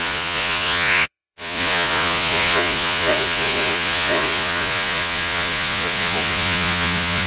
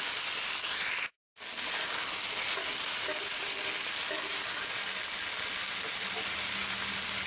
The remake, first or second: first